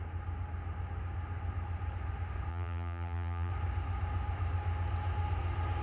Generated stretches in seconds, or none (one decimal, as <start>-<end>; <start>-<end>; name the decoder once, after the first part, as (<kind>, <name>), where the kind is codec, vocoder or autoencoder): 2.5-3.5 (vocoder, BigVGAN v2)

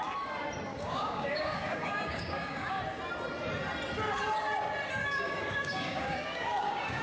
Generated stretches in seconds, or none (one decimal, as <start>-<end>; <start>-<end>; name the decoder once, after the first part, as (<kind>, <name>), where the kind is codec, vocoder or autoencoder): 0.7-2.8 (codec, DAC); 5.0-7.0

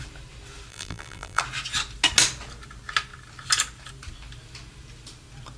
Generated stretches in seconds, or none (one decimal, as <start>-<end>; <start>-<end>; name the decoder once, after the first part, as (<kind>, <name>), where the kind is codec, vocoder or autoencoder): 0.7-1.4 (vocoder, BigVGAN v2)